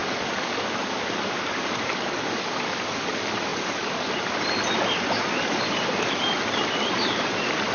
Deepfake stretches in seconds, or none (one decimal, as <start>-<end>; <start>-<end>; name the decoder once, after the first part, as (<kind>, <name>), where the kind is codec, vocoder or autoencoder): 0.0-2.7 (codec, DAC)